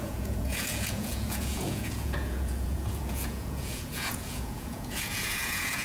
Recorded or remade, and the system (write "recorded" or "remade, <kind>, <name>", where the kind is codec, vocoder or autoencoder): remade, vocoder, Vocos